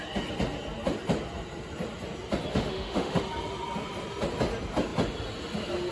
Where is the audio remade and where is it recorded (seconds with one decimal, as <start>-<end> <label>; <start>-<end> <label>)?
0.0-2.5 recorded; 2.5-3.2 remade; 3.2-5.9 recorded